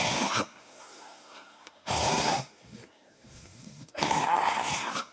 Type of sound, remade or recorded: remade